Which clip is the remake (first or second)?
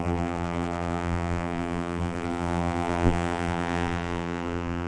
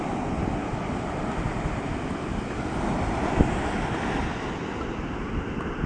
first